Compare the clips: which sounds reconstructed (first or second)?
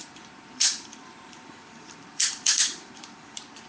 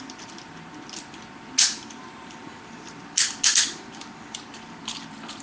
first